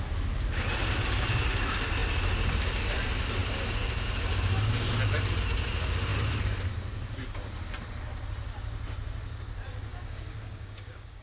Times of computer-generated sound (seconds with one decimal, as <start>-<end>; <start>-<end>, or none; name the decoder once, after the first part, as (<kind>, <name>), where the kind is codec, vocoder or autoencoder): 9.9-11.2 (codec, DAC)